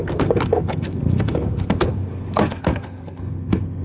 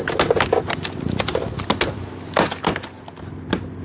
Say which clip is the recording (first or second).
second